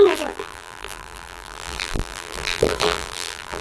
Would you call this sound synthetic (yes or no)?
yes